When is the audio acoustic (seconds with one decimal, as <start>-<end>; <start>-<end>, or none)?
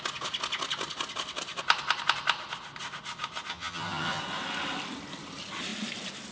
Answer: 0.0-3.5; 4.2-6.3